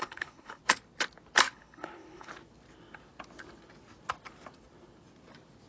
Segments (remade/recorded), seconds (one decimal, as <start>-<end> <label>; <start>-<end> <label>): 0.0-0.6 remade; 0.6-1.5 recorded; 1.5-2.3 remade; 2.3-5.7 recorded